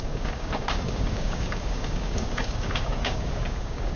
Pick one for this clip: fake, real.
fake